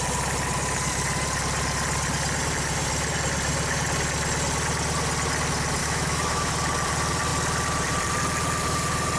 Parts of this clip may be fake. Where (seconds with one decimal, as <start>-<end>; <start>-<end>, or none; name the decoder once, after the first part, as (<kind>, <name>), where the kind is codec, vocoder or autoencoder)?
5.8-6.5 (autoencoder, DAC-VAE)